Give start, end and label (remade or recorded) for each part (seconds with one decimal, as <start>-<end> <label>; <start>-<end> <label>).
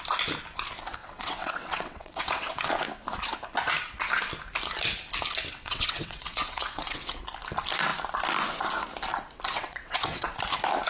0.0-1.0 recorded; 1.0-2.6 remade; 2.6-5.5 recorded; 5.5-7.2 remade; 7.2-9.5 recorded; 9.5-10.3 remade; 10.3-10.9 recorded